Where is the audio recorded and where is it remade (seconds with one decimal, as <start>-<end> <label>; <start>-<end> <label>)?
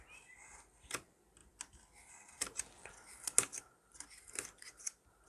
0.0-5.3 recorded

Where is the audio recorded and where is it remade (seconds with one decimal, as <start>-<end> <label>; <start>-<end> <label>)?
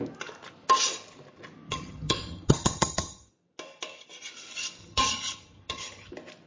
0.0-1.7 recorded; 1.7-3.3 remade; 3.3-4.8 recorded; 4.8-6.1 remade; 6.1-6.5 recorded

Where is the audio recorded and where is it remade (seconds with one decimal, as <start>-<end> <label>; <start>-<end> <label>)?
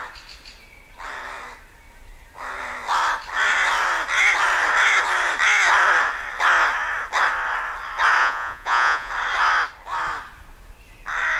0.0-8.2 recorded; 8.2-9.1 remade; 9.1-11.4 recorded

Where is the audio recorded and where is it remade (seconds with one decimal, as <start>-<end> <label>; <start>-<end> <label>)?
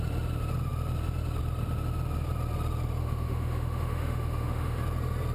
0.0-3.0 recorded; 3.0-4.8 remade; 4.8-5.3 recorded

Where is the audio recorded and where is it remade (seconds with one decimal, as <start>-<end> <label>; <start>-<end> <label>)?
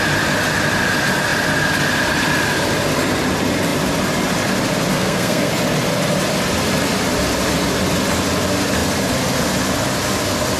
0.0-4.9 recorded; 4.9-5.5 remade; 5.5-10.6 recorded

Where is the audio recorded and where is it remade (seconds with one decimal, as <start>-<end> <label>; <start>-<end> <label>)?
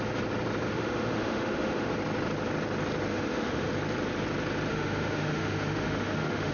0.0-0.7 recorded; 0.7-1.9 remade; 1.9-3.1 recorded; 3.1-3.7 remade; 3.7-4.7 recorded; 4.7-6.5 remade